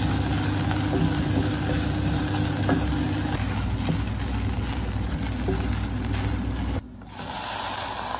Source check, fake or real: real